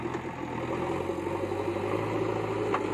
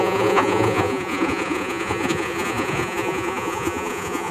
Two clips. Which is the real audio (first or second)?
first